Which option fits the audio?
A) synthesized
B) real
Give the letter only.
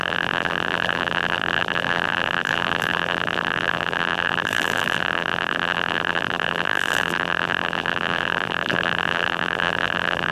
A